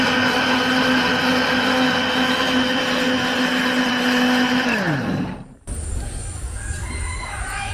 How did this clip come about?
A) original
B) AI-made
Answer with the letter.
A